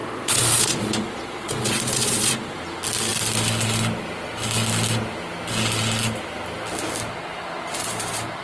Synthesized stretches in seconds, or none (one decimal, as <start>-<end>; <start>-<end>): 0.0-2.6